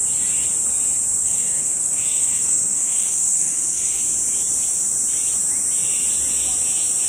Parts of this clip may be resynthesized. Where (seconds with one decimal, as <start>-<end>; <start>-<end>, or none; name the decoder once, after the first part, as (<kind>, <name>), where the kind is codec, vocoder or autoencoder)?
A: 1.2-4.0 (codec, SNAC)